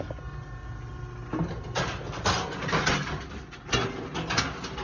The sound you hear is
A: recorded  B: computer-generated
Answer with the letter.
A